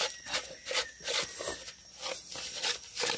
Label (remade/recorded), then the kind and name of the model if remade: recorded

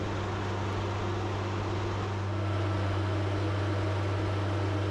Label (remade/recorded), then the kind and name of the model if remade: recorded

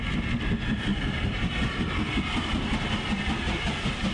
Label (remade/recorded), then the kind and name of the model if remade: recorded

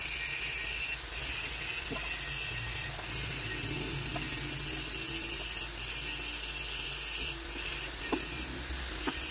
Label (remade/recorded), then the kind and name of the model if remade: recorded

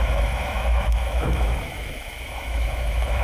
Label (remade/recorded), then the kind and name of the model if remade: remade, autoencoder, DAC-VAE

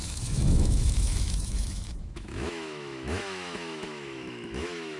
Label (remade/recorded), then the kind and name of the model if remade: remade, autoencoder, DAC-VAE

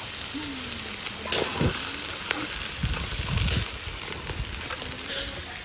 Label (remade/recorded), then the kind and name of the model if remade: recorded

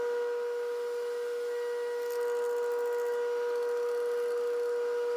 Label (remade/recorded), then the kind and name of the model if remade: recorded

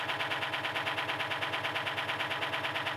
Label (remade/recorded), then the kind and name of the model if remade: recorded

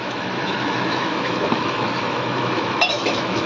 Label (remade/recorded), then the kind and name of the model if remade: remade, autoencoder, DAC-VAE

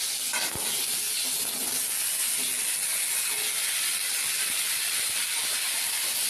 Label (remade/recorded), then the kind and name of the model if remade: recorded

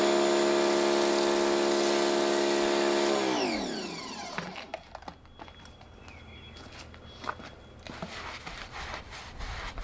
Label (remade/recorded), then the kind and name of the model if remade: recorded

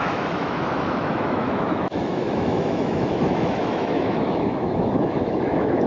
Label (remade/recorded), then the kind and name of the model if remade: remade, autoencoder, DAC-VAE